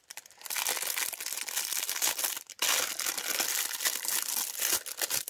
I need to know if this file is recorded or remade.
recorded